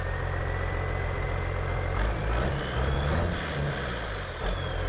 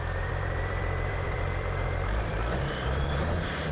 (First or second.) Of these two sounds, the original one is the first